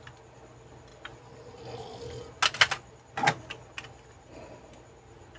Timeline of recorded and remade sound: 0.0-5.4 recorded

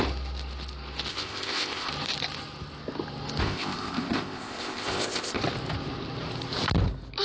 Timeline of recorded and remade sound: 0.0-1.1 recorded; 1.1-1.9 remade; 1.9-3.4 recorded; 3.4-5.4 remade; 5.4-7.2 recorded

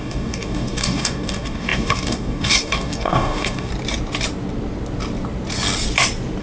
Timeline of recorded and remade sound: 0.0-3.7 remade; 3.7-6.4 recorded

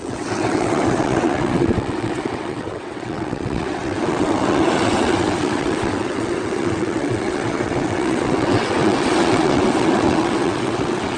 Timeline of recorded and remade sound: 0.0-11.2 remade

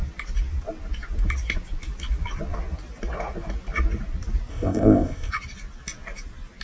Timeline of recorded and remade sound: 0.0-4.5 recorded; 4.5-5.3 remade; 5.3-6.6 recorded

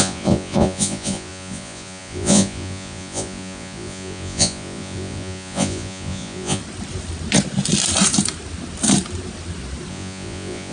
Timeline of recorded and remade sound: 0.0-6.6 remade; 6.6-9.9 recorded; 9.9-10.7 remade

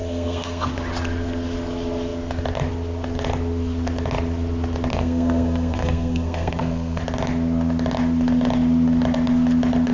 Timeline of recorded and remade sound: 0.0-0.7 remade; 0.7-4.9 recorded; 4.9-7.0 remade; 7.0-9.9 recorded

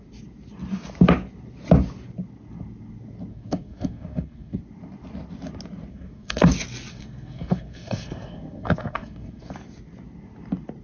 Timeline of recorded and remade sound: 0.0-3.3 recorded; 3.3-4.6 remade; 4.6-5.9 recorded; 5.9-6.5 remade; 6.5-6.9 recorded; 6.9-9.5 remade; 9.5-10.8 recorded